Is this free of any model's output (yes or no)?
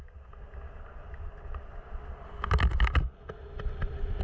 yes